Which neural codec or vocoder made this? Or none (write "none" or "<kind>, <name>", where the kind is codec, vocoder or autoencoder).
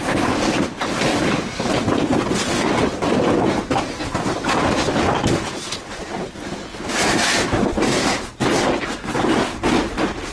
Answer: none